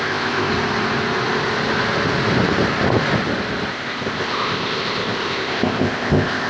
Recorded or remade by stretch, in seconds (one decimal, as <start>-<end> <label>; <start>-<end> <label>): 0.0-0.5 remade; 0.5-3.7 recorded; 3.7-6.5 remade